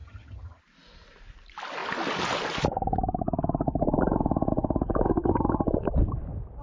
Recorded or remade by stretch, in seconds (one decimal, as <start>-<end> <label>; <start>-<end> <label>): 0.0-0.6 remade; 0.6-6.6 recorded